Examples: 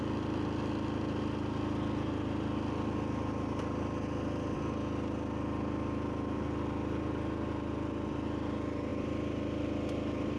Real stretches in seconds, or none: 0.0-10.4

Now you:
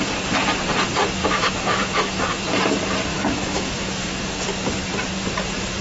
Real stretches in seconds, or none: 0.0-1.2; 2.1-3.1; 4.1-5.8

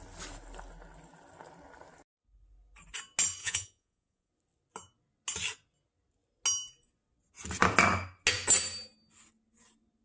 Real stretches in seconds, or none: 0.0-3.4; 4.3-10.0

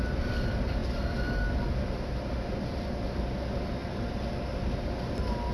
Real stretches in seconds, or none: 0.0-5.5

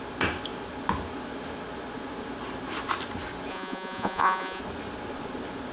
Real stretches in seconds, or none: 0.0-3.5; 4.6-5.7

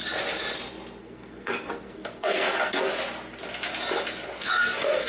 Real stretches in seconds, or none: 0.0-1.0; 2.9-4.4

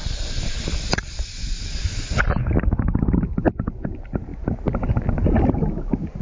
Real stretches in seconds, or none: 0.0-1.4; 2.1-6.2